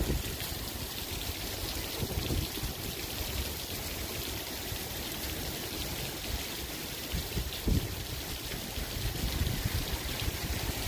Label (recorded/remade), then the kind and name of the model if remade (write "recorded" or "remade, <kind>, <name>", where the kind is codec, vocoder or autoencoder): remade, vocoder, BigVGAN v2